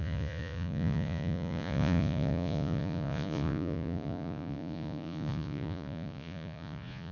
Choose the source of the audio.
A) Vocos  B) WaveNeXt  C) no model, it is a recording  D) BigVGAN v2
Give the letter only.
A